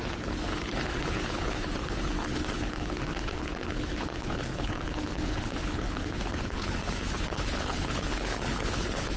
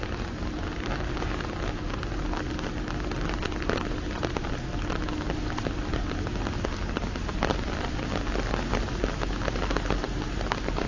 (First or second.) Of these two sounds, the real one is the second